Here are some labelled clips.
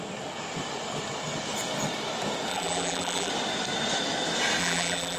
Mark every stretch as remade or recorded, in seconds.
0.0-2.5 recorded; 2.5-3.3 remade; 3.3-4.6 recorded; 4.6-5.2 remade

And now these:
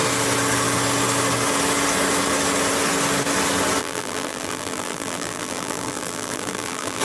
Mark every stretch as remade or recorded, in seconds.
0.0-3.8 recorded; 3.8-7.0 remade

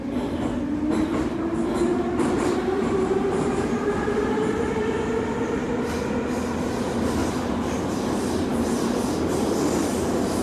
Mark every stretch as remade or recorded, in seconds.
0.0-1.9 recorded; 1.9-5.0 remade; 5.0-7.2 recorded; 7.2-7.8 remade; 7.8-10.4 recorded

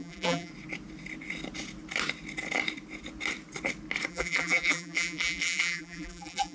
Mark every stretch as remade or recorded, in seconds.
0.0-0.5 remade; 0.5-4.1 recorded; 4.1-6.5 remade

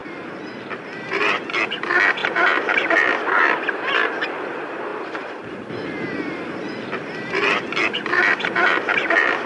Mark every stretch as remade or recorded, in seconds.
0.0-1.4 remade; 1.4-2.2 recorded; 2.2-3.7 remade; 3.7-4.9 recorded; 4.9-9.5 remade

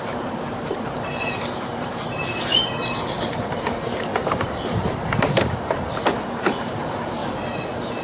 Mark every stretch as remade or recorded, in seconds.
0.0-7.2 remade; 7.2-8.0 recorded

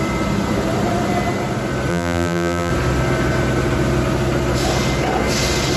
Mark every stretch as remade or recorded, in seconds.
0.0-1.9 recorded; 1.9-2.7 remade; 2.7-5.8 recorded

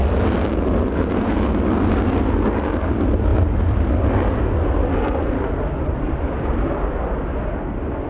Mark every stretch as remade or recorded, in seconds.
0.0-8.1 recorded